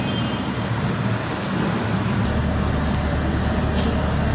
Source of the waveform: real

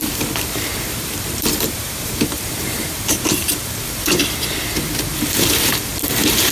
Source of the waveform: fake